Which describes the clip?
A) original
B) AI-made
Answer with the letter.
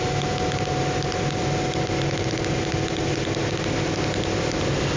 A